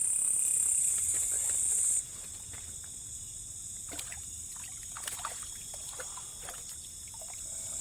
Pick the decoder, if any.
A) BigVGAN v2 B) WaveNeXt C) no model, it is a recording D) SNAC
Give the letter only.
C